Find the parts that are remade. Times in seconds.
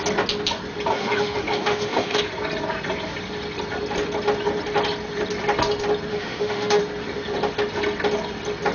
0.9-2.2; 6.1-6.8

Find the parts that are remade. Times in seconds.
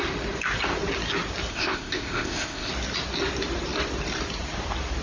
1.5-2.7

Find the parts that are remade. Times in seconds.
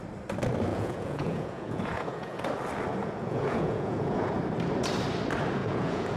0.7-2.4; 3.0-4.3; 5.6-6.2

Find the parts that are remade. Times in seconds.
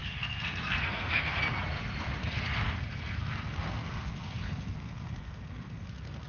0.0-1.4; 2.2-6.3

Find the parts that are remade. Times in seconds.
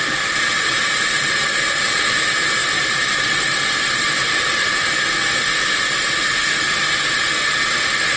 2.6-5.1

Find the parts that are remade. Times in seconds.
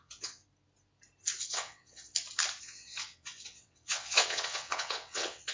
0.0-0.4; 1.4-2.1; 2.6-5.5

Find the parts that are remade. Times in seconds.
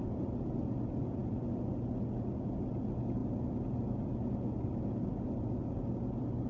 none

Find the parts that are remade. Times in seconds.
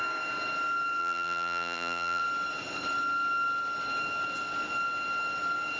1.0-2.2